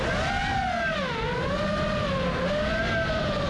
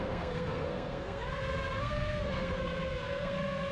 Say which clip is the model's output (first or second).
second